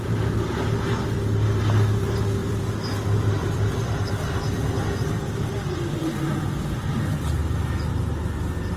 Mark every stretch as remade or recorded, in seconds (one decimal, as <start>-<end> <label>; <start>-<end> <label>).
0.0-2.4 recorded; 2.4-6.8 remade; 6.8-8.8 recorded